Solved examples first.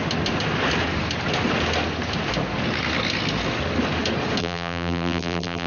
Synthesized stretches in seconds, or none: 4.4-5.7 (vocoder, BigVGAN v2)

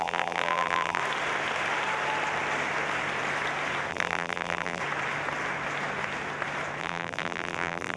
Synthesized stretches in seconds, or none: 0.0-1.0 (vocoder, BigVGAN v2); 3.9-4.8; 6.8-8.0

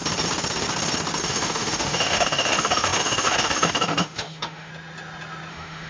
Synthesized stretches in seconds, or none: 1.2-4.7 (autoencoder, DAC-VAE); 5.5-5.9